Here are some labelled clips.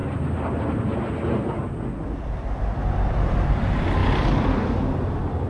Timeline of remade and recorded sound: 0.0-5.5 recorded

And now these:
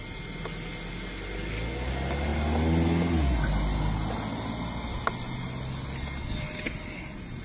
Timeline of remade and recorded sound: 0.0-7.4 recorded